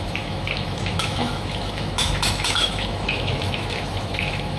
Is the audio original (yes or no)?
no